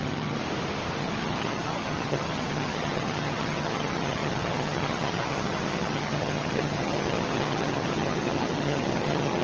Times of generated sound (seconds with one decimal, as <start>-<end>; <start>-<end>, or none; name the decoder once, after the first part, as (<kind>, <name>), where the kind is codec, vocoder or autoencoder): 0.0-0.4 (vocoder, HiFi-GAN); 1.0-9.4